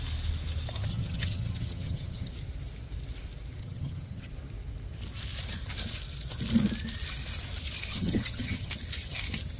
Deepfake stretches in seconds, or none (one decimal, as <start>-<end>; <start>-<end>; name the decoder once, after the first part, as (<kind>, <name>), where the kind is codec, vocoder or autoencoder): 0.9-2.3 (vocoder, HiFi-GAN); 3.6-4.3; 7.9-8.7